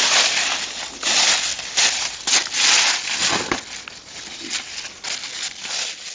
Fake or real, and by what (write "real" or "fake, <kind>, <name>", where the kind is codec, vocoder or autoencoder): real